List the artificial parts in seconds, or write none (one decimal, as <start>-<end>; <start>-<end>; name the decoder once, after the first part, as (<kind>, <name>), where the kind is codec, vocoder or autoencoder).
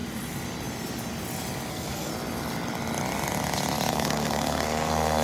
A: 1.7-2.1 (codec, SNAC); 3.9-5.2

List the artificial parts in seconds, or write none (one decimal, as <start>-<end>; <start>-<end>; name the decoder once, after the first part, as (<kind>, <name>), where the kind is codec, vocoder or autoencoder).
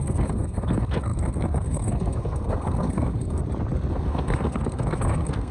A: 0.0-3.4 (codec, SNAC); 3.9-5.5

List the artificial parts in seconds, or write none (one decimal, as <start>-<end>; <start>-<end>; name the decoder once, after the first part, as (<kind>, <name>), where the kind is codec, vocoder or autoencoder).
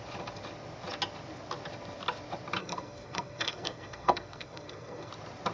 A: 2.6-5.1 (codec, SNAC)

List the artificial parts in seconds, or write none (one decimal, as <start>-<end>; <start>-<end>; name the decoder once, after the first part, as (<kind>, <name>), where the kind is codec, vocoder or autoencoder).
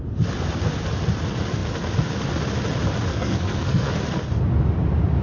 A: 3.1-3.9 (codec, SNAC)